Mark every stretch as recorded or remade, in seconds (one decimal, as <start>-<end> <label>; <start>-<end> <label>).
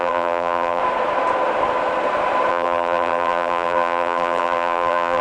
0.0-0.8 remade; 0.8-2.5 recorded; 2.5-5.2 remade